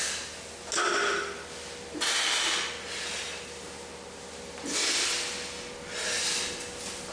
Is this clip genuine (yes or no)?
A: yes